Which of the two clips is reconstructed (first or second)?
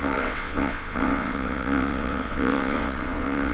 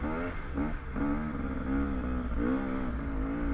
first